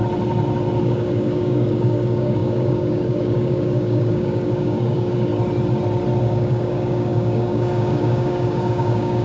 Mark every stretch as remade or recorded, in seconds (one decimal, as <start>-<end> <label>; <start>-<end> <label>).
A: 0.0-0.8 recorded; 0.8-5.3 remade; 5.3-6.2 recorded; 6.2-9.2 remade